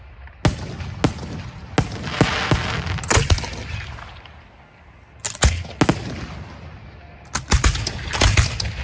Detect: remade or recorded recorded